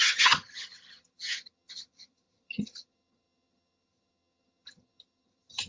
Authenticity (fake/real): fake